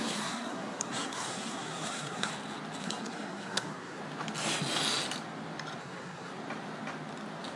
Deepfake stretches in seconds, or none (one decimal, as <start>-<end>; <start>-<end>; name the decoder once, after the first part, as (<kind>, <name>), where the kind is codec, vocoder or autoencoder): 0.0-2.3 (codec, SNAC); 2.8-4.0; 5.8-6.3